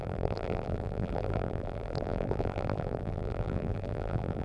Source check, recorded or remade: remade